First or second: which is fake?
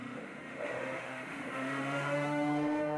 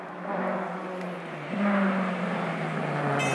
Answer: first